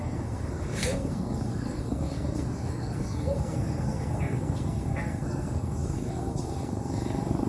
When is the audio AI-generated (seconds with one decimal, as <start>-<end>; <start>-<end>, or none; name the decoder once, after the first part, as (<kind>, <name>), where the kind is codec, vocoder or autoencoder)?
0.0-7.5 (codec, SNAC)